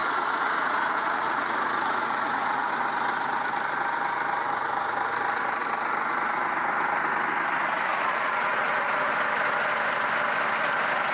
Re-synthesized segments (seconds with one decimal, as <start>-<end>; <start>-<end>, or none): 0.0-2.7; 7.7-9.1